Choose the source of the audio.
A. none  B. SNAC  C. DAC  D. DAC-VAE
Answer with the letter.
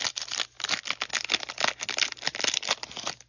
A